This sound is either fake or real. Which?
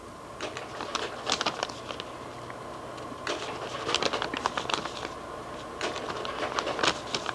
real